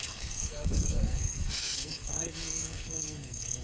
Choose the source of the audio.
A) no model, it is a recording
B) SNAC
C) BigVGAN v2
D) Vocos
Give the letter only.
B